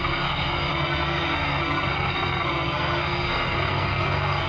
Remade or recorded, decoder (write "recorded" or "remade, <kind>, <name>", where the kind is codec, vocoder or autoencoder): remade, codec, SNAC